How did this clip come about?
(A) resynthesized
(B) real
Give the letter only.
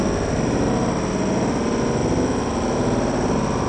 B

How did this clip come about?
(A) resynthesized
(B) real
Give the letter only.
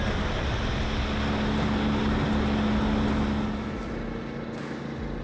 B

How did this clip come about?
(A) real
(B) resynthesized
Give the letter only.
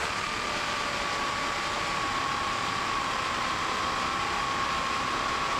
A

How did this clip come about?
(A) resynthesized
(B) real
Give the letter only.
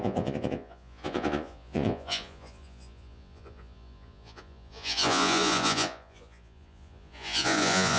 A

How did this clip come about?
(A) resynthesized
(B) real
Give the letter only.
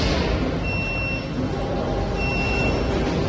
B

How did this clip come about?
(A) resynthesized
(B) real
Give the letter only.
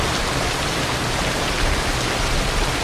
A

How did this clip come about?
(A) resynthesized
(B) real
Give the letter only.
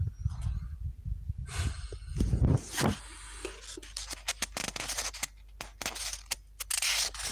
B